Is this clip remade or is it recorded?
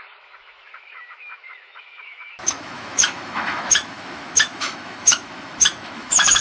remade